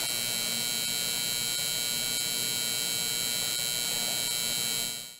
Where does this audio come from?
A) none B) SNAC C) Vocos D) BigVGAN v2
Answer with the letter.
A